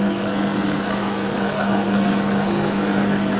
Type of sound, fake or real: fake